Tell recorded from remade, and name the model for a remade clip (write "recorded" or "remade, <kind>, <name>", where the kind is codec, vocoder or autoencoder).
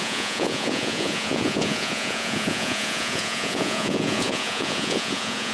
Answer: remade, vocoder, Vocos